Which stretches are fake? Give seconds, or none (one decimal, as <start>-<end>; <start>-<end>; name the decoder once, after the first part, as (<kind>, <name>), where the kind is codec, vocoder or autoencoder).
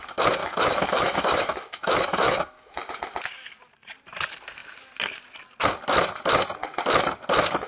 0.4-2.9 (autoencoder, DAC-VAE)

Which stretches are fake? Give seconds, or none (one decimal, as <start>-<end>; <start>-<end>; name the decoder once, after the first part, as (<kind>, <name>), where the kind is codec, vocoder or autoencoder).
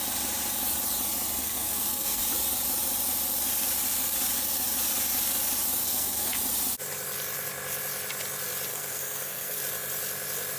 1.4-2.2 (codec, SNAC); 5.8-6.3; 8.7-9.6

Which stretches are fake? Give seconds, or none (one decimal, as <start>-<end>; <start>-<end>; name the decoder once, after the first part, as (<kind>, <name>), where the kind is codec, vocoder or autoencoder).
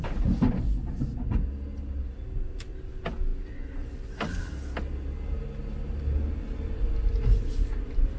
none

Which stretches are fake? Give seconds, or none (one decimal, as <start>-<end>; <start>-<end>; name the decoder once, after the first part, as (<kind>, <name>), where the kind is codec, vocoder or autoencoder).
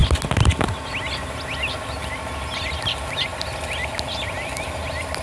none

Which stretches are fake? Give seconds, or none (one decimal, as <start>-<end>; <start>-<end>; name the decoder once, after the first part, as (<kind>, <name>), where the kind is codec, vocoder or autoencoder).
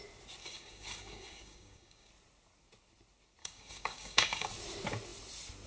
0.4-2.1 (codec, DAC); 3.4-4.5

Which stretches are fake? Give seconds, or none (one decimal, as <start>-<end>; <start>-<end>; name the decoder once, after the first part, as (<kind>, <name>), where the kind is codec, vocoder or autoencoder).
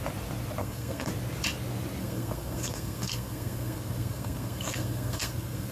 0.6-1.1 (codec, SNAC); 2.0-5.7